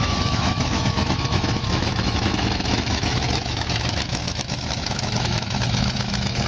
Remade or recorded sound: remade